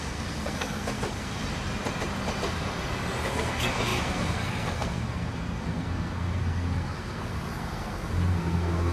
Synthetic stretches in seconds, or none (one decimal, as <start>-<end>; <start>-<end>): 0.0-1.4; 3.3-8.9

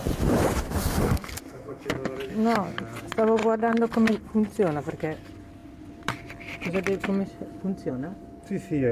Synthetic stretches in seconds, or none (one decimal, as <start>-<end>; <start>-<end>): 0.8-1.9

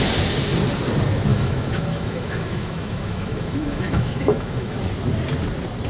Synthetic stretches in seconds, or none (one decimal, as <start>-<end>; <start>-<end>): 1.3-4.8

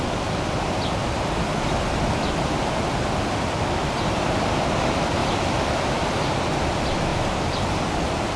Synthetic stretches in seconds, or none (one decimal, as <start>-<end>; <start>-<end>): 1.0-4.2; 5.2-6.0